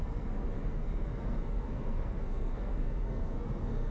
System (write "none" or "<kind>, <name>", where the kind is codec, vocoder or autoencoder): codec, SNAC